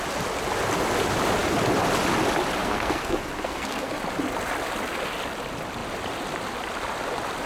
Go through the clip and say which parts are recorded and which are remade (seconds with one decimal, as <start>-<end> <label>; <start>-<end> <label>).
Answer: 0.0-2.6 recorded; 2.6-4.0 remade; 4.0-7.5 recorded